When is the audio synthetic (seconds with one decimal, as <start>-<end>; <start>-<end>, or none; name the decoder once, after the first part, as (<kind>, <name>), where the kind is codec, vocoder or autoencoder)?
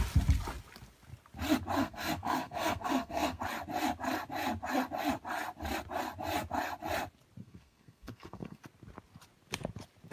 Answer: 1.8-3.4 (codec, SNAC); 7.4-8.6